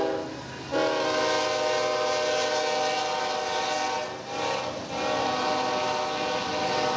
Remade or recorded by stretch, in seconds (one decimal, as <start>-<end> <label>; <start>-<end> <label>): 0.0-7.0 recorded